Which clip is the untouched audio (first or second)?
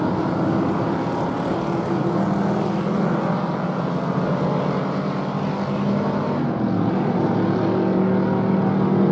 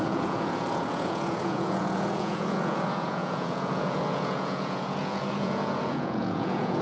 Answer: first